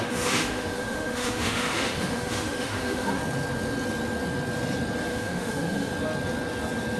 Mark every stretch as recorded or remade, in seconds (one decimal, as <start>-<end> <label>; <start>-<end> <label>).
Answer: 0.0-3.2 remade; 3.2-5.1 recorded; 5.1-5.9 remade; 5.9-7.0 recorded